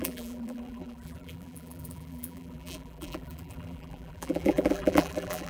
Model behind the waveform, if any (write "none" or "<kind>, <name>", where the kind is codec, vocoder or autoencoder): vocoder, BigVGAN v2